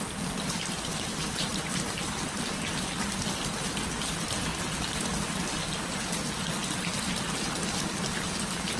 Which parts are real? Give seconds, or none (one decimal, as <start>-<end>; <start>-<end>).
0.0-1.5; 3.0-4.5; 5.6-8.8